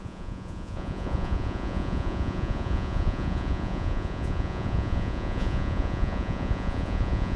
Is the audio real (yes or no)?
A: no